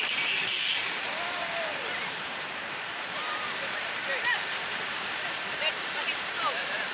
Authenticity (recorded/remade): remade